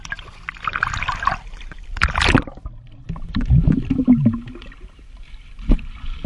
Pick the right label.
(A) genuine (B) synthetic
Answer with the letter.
A